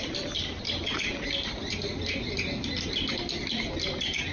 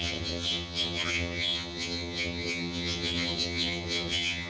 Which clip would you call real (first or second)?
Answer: first